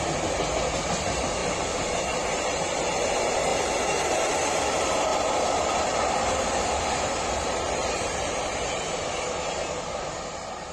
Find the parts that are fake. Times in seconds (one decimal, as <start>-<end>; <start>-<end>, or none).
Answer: 5.1-8.7